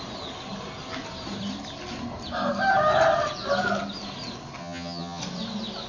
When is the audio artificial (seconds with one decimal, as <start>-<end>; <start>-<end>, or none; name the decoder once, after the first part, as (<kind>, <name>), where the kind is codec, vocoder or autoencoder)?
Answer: 4.6-5.2 (vocoder, HiFi-GAN)